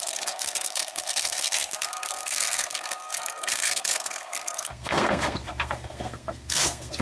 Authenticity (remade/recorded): remade